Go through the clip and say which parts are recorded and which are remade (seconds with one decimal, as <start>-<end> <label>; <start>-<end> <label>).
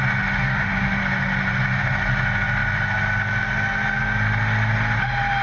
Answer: 0.0-0.4 recorded; 0.4-1.0 remade; 1.0-5.4 recorded